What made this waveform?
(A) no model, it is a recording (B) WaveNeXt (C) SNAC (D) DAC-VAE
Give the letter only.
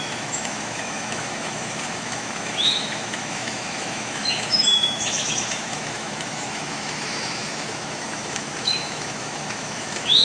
D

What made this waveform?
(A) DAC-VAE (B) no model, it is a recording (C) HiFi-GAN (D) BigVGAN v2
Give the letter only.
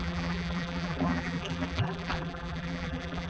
D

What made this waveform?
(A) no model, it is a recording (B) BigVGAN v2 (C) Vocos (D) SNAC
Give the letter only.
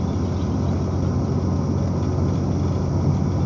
A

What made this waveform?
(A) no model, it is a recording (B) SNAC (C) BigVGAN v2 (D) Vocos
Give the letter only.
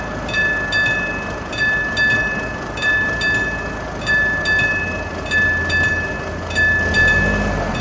A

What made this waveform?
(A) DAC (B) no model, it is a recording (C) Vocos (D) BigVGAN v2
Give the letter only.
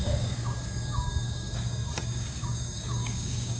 A